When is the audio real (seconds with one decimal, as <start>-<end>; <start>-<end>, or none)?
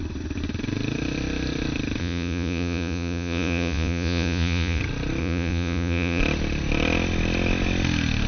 0.0-2.0; 4.8-5.2; 6.2-8.3